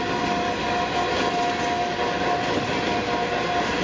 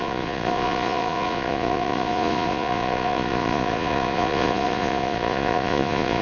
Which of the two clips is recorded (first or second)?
first